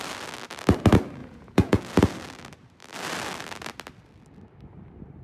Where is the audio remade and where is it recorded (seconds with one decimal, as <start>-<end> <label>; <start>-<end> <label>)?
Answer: 0.0-1.2 recorded; 1.2-1.8 remade; 1.8-5.2 recorded